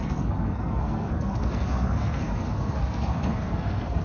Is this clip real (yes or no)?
no